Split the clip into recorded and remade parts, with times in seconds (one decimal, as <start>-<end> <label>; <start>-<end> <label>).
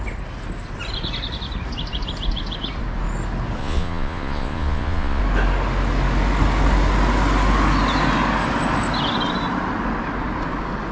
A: 0.0-3.6 recorded; 3.6-5.2 remade; 5.2-10.9 recorded